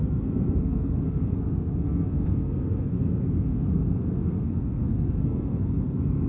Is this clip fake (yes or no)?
yes